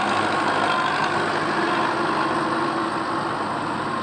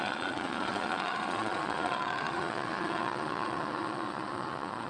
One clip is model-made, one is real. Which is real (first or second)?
first